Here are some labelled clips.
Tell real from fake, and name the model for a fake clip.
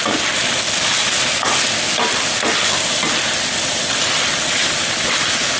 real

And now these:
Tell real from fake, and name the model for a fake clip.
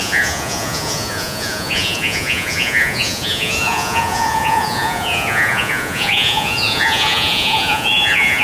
fake, vocoder, Vocos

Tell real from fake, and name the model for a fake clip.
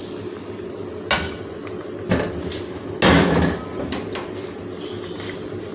real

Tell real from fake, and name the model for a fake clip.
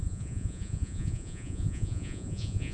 fake, vocoder, Vocos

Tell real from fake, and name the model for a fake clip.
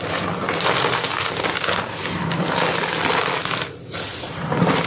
real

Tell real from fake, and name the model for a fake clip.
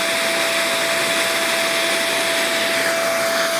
real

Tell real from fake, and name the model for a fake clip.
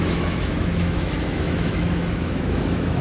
fake, autoencoder, DAC-VAE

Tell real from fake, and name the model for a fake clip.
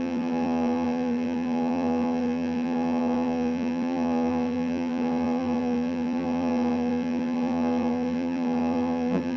fake, vocoder, BigVGAN v2